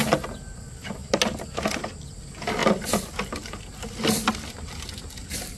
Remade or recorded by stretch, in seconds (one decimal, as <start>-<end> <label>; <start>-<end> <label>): 0.0-5.6 recorded